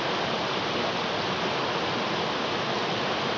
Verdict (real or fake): real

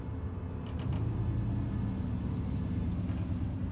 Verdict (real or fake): real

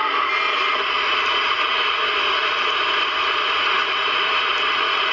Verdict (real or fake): real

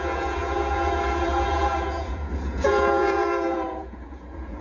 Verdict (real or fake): fake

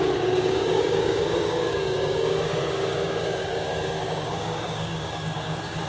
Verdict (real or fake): fake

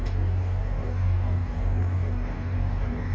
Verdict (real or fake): fake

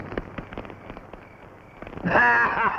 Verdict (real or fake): real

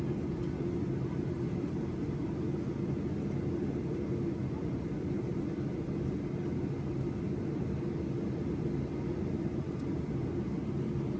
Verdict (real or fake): real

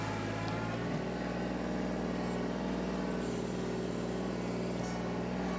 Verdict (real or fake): real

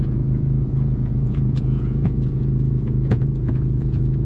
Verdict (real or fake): fake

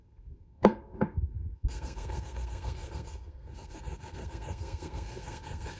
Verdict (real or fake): fake